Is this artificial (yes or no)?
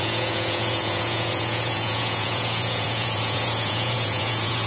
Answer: yes